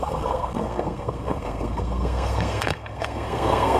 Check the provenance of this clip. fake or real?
fake